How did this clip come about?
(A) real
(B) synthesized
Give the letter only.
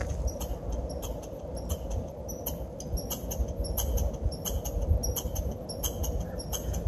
A